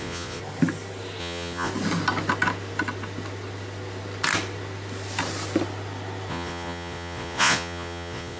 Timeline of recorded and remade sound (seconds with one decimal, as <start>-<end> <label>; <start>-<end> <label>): 0.0-0.4 remade; 0.4-1.2 recorded; 1.2-1.7 remade; 1.7-6.3 recorded; 6.3-8.4 remade